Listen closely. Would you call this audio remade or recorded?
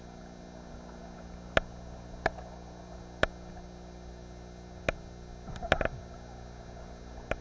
recorded